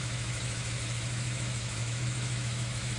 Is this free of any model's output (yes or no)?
no